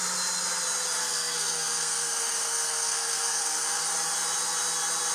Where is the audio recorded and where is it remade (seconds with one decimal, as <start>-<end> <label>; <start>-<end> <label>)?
0.0-1.0 recorded; 1.0-3.8 remade; 3.8-5.1 recorded